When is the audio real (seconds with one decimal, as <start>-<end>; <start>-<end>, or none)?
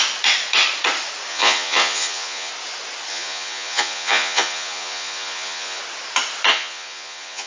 0.0-1.3; 2.5-3.1; 5.8-6.5